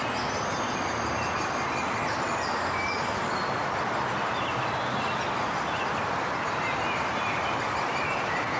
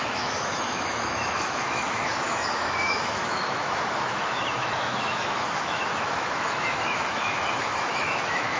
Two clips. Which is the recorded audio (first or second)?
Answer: first